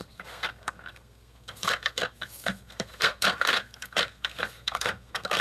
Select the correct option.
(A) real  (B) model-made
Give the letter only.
B